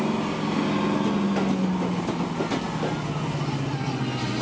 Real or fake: real